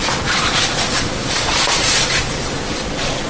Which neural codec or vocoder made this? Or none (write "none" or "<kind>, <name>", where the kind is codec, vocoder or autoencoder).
vocoder, Vocos